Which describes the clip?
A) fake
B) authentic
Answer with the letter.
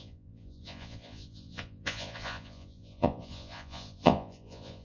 A